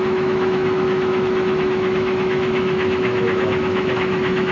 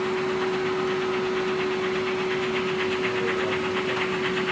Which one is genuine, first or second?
second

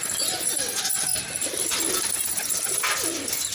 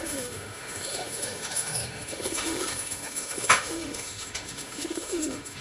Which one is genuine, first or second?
first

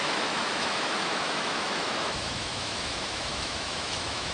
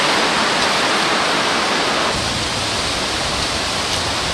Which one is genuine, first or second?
second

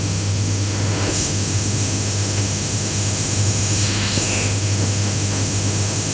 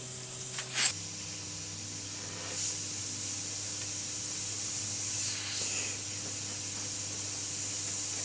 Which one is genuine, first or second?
second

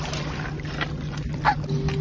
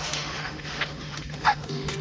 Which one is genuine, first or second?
first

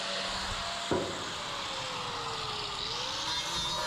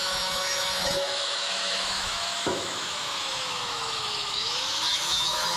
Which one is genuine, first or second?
first